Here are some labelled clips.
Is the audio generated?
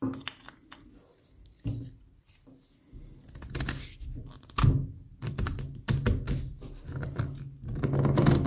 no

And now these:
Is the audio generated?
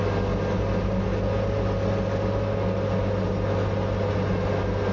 no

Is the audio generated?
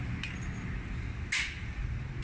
no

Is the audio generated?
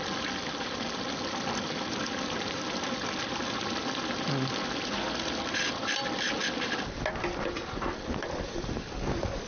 no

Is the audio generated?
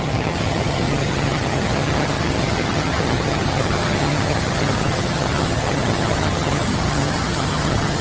yes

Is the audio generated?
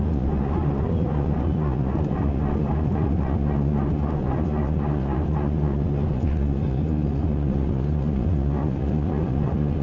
yes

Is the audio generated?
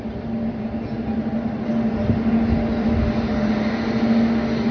no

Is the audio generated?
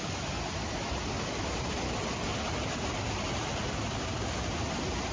no